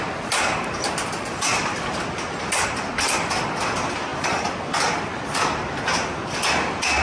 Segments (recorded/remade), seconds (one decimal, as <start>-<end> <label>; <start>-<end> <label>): 0.0-7.0 recorded